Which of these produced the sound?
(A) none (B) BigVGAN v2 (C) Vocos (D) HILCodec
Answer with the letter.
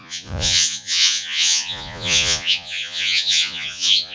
C